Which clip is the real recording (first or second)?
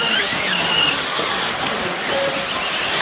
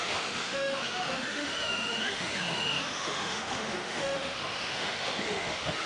first